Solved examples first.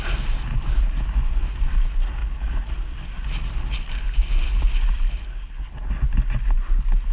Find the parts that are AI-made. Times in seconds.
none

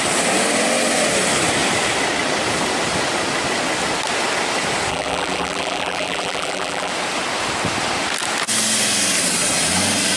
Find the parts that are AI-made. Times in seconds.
4.9-6.9

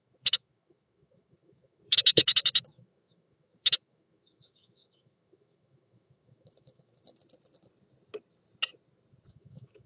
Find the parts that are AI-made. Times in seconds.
0.0-7.2; 9.3-9.9

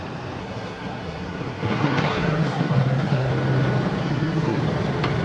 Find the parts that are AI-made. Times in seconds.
0.4-3.3; 4.0-4.6

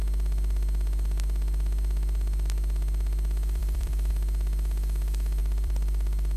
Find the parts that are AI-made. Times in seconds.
3.6-4.1; 5.4-6.4